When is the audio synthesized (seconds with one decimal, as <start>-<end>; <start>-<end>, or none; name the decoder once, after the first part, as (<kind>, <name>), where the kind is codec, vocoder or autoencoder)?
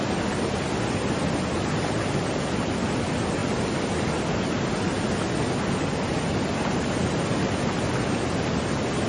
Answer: none